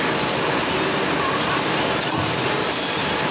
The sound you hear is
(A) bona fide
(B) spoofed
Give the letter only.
A